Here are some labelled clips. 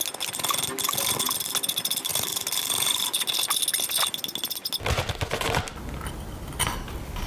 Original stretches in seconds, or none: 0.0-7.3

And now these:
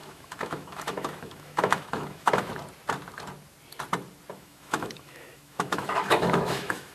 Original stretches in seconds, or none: 2.5-4.3